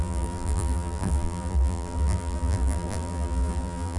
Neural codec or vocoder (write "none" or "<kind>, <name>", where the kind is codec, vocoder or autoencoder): vocoder, BigVGAN v2